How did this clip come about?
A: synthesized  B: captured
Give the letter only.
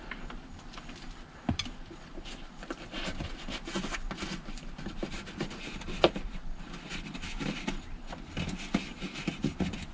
B